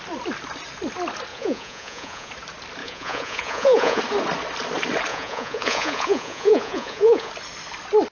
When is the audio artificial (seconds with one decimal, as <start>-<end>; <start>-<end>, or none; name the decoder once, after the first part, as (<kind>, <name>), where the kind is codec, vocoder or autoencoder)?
1.3-2.3 (vocoder, Vocos); 2.8-4.0; 5.1-7.3